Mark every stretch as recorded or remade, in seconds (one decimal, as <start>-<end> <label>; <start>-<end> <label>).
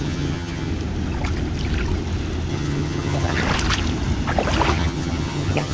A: 0.0-0.7 remade; 0.7-2.5 recorded; 2.5-3.4 remade; 3.4-4.7 recorded; 4.7-5.7 remade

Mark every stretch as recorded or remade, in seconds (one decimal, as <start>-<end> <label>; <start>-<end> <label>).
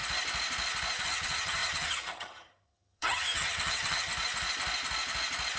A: 0.0-1.0 recorded; 1.0-4.1 remade; 4.1-5.6 recorded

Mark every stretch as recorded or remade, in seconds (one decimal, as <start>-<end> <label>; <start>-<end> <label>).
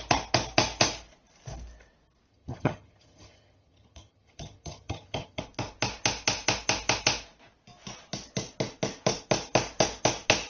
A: 0.0-2.3 recorded; 2.3-5.4 remade; 5.4-10.5 recorded